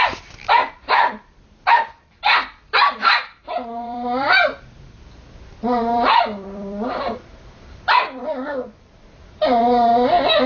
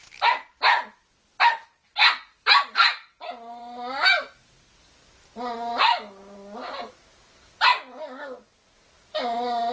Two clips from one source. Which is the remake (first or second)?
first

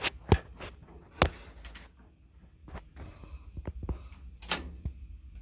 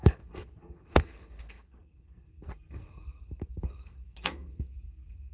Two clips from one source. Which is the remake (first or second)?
second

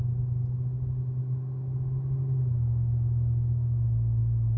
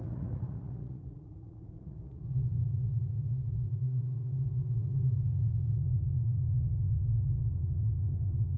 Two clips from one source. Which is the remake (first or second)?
second